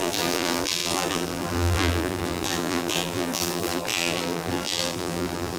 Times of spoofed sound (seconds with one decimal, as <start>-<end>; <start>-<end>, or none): 0.0-5.6